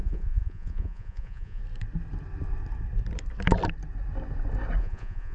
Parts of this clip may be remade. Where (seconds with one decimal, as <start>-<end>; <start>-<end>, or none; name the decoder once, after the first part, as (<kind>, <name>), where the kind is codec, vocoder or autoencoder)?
0.0-1.6 (vocoder, Vocos); 4.8-5.3